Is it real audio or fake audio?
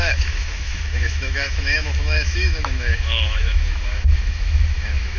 fake